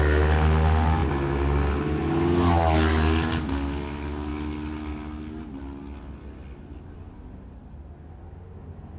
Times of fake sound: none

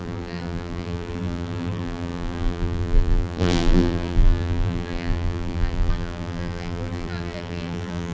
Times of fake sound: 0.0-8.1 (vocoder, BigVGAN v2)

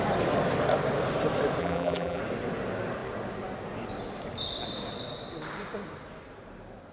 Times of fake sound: 1.6-2.2 (vocoder, BigVGAN v2)